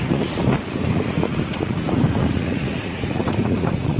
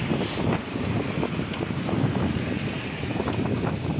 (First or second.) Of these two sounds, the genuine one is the second